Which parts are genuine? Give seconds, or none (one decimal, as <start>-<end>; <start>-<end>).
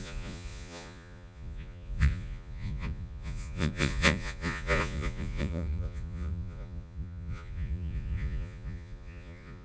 none